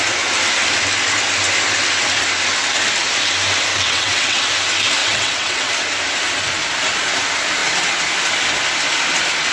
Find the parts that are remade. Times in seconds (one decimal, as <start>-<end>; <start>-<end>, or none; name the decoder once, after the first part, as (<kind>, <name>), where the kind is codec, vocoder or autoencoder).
3.7-4.4 (vocoder, WaveNeXt); 5.0-5.7